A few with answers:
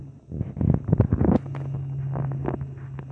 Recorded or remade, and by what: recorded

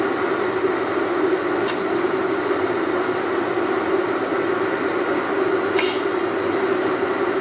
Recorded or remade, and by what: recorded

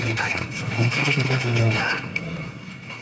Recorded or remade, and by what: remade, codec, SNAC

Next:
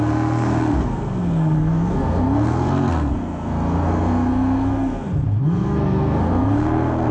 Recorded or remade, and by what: remade, codec, SNAC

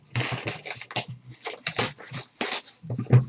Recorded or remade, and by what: recorded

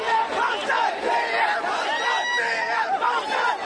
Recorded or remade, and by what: recorded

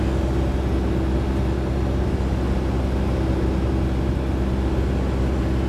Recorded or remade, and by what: recorded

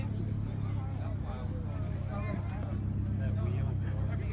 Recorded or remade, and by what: recorded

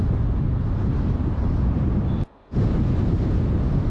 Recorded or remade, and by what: recorded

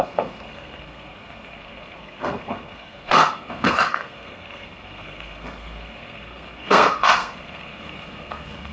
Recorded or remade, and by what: remade, codec, SNAC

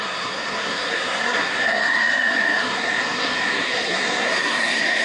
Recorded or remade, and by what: remade, codec, SNAC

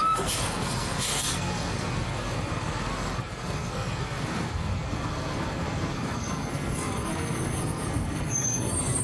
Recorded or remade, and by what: remade, codec, SNAC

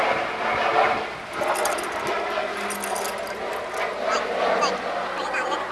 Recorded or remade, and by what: recorded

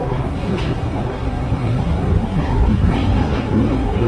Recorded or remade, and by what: remade, codec, SNAC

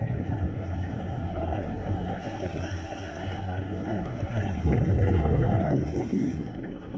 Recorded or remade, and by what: remade, codec, SNAC